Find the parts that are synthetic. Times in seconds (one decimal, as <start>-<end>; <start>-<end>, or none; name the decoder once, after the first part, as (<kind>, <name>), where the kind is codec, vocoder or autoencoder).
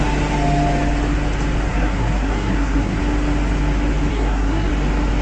1.7-3.0 (codec, SNAC); 4.1-4.7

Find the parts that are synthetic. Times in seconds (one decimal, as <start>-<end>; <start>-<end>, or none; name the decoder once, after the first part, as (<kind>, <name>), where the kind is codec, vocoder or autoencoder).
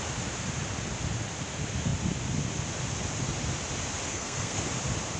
4.1-4.6 (codec, SNAC)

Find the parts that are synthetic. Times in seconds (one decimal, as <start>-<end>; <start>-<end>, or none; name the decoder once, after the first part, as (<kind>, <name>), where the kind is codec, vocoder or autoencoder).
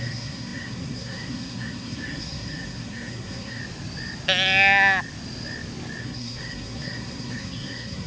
0.0-3.6 (codec, SNAC); 6.0-8.1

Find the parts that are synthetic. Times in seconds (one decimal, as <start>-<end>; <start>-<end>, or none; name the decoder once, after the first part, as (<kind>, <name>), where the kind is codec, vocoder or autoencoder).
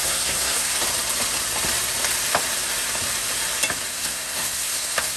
0.0-0.8 (codec, SNAC); 3.9-5.2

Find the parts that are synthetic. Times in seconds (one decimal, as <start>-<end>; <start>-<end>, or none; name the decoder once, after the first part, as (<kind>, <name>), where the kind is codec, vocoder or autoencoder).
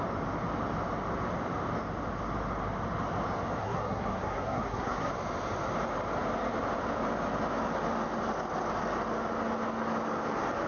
3.6-5.1 (codec, SNAC)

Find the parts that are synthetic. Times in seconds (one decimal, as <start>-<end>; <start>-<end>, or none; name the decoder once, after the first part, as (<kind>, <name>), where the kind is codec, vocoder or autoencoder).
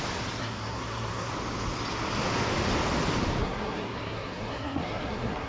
0.4-1.3 (codec, SNAC); 3.4-5.5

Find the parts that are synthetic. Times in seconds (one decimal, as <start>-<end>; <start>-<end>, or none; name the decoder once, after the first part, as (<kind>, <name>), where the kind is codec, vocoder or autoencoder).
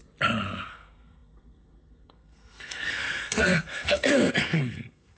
0.7-5.2 (codec, SNAC)